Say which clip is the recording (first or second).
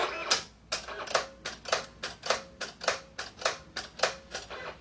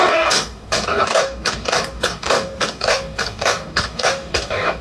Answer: first